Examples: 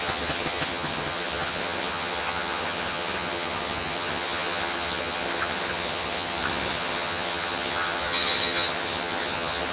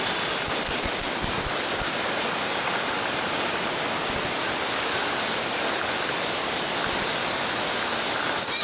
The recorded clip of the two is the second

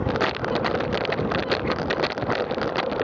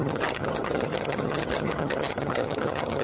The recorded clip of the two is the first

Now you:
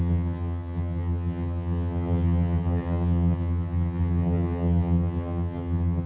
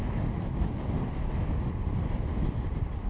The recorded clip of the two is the second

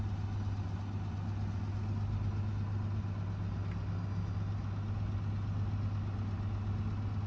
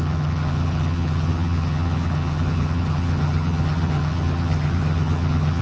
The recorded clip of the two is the first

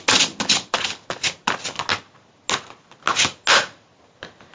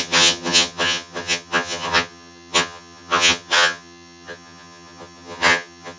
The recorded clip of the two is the first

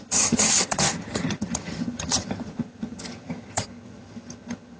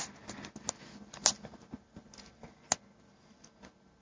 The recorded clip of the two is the second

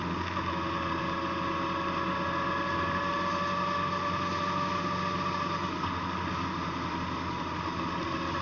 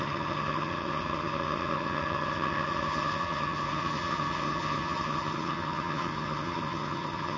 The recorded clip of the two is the first